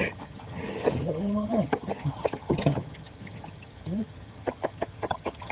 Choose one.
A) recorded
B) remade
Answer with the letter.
B